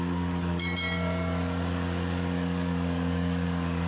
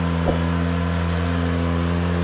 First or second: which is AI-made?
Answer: first